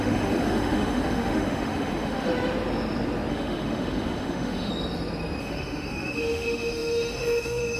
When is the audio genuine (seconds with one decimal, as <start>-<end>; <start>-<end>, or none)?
2.3-3.3; 4.7-5.4